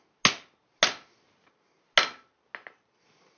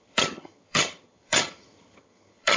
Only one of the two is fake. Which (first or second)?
second